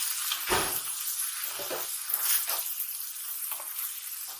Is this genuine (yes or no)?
yes